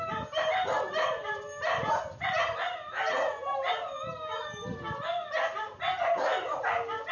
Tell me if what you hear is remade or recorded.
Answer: recorded